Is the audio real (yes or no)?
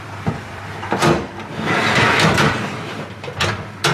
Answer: no